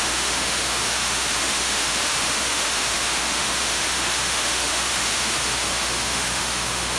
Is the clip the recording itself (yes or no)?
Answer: no